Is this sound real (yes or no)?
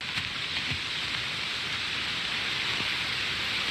yes